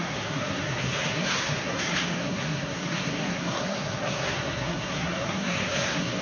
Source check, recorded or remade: remade